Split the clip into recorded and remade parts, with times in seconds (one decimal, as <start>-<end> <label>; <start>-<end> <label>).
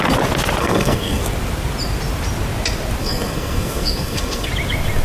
0.0-0.6 recorded; 0.6-1.2 remade; 1.2-3.0 recorded; 3.0-4.5 remade; 4.5-5.0 recorded